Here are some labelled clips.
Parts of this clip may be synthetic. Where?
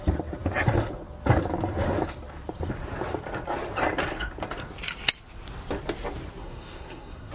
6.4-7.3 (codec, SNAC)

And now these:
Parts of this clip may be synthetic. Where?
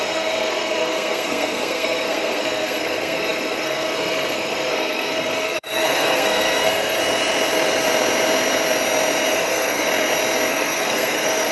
0.0-7.0 (codec, SNAC); 9.3-9.9; 10.5-11.5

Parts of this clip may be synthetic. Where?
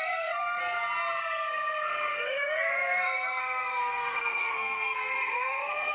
0.0-0.6 (codec, SNAC); 1.2-5.9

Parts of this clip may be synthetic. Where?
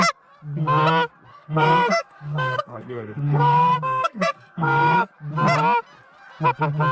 1.3-5.1 (codec, SNAC)